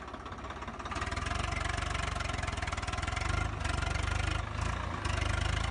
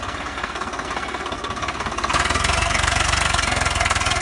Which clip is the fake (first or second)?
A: second